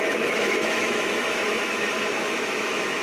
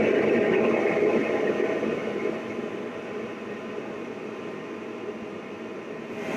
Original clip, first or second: second